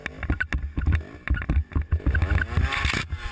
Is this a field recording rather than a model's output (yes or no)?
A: yes